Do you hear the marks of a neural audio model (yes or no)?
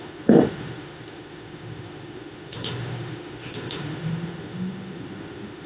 yes